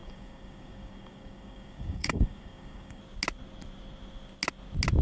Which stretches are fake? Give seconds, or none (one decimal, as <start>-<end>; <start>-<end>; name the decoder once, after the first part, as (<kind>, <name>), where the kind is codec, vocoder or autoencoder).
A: 0.0-3.0 (codec, DAC)